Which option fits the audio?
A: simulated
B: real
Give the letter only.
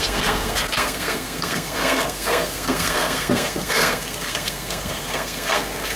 A